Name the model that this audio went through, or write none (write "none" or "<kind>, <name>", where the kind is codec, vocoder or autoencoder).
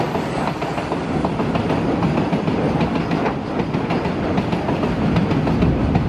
none